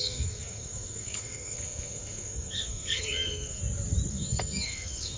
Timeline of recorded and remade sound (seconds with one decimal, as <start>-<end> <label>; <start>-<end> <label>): 0.0-3.6 remade; 3.6-4.1 recorded; 4.1-5.2 remade